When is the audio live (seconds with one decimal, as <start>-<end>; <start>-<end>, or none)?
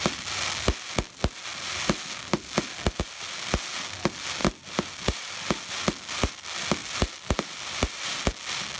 0.0-4.4; 5.7-6.8; 8.2-8.8